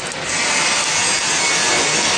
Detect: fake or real real